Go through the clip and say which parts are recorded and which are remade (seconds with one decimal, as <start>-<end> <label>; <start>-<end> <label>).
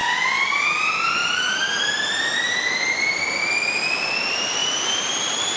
0.0-1.2 recorded; 1.2-3.2 remade; 3.2-4.6 recorded; 4.6-5.6 remade